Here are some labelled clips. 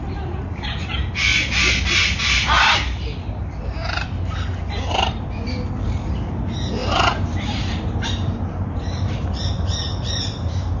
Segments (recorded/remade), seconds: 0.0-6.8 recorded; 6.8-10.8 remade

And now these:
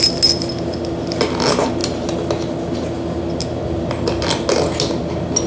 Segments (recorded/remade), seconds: 0.0-5.5 recorded

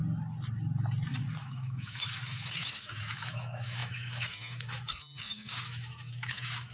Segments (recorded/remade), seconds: 0.0-1.4 recorded; 1.4-6.7 remade

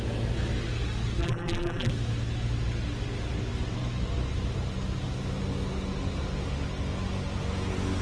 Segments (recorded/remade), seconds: 0.0-1.2 recorded; 1.2-1.9 remade; 1.9-8.0 recorded

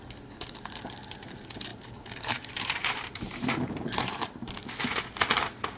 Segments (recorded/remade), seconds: 0.0-1.7 recorded; 1.7-4.5 remade; 4.5-5.8 recorded

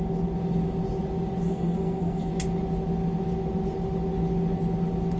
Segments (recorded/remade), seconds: 0.0-1.4 recorded; 1.4-2.3 remade; 2.3-5.2 recorded